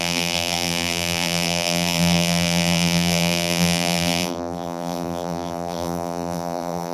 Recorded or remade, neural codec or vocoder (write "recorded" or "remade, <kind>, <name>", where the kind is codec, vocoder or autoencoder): remade, vocoder, BigVGAN v2